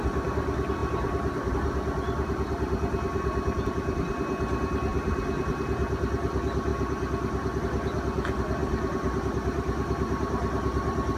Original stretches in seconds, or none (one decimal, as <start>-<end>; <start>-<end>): 0.0-0.8; 1.5-4.9; 5.5-11.2